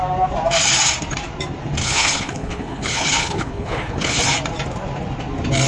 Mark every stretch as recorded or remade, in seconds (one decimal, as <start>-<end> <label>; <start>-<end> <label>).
0.0-1.8 recorded; 1.8-4.2 remade; 4.2-5.7 recorded